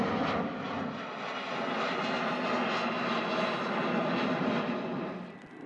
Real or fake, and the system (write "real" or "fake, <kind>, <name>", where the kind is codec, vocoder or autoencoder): real